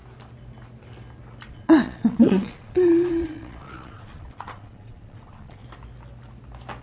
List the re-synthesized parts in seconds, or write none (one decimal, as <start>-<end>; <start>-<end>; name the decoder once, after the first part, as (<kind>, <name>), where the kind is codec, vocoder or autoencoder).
1.5-5.6 (vocoder, Vocos)